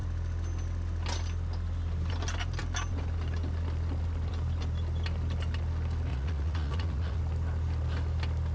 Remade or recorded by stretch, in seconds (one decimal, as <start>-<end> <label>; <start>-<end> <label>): 0.0-6.1 recorded; 6.1-7.2 remade; 7.2-8.5 recorded